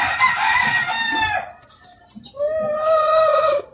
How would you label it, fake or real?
real